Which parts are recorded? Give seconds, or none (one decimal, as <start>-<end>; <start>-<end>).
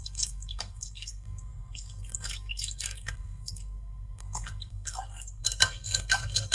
none